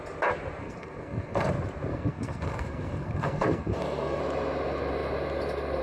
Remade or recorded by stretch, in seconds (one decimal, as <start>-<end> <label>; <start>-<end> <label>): 0.0-0.6 recorded; 0.6-1.5 remade; 1.5-1.9 recorded; 1.9-4.2 remade; 4.2-5.8 recorded